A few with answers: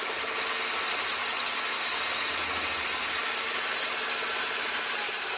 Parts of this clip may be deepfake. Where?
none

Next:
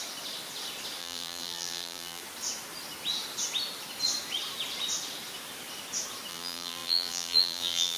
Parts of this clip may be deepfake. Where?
1.0-2.2; 6.3-8.0

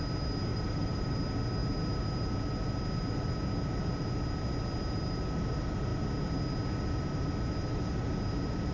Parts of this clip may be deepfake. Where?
0.5-1.1

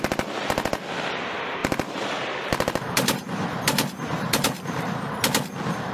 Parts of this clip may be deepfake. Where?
1.6-5.1

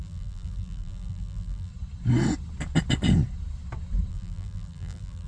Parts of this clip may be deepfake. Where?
0.0-1.7; 4.1-5.3